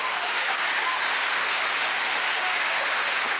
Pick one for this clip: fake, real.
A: fake